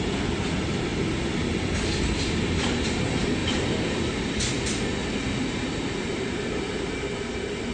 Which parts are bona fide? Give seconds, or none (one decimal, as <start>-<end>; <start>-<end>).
0.0-3.4; 4.2-5.0; 5.6-7.7